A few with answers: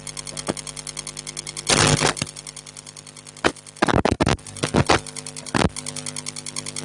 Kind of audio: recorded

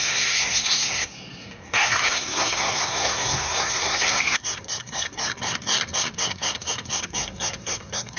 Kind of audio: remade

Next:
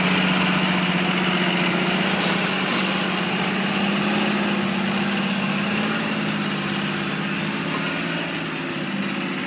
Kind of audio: recorded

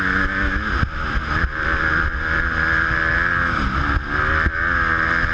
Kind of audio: recorded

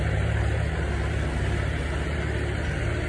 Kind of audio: remade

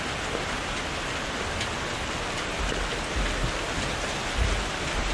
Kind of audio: recorded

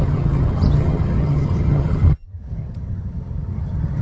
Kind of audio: remade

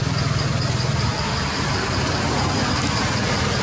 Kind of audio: recorded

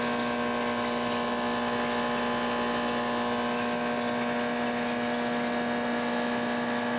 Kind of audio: recorded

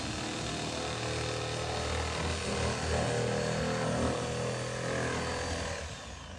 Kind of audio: recorded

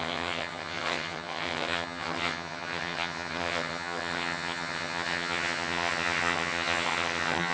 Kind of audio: remade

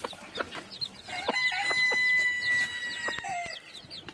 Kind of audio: recorded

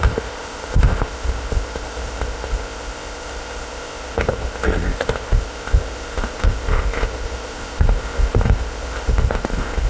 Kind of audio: remade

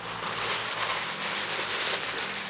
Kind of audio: recorded